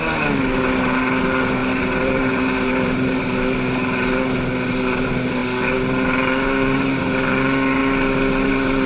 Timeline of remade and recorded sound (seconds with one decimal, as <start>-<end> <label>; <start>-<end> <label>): 0.0-1.6 recorded; 1.6-3.2 remade; 3.2-8.9 recorded